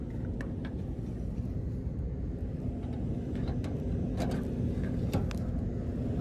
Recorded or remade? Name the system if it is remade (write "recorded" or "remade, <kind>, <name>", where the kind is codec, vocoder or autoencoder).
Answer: recorded